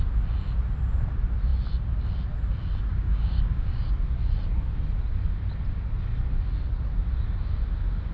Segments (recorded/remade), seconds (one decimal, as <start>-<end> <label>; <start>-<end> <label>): 0.0-2.9 recorded; 2.9-3.8 remade; 3.8-8.1 recorded